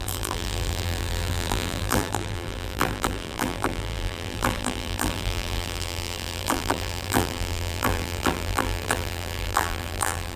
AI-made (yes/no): yes